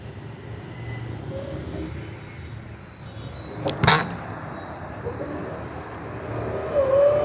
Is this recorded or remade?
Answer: recorded